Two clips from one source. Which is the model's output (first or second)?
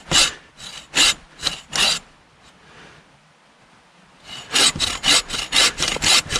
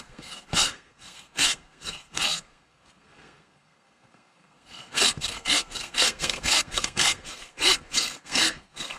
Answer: second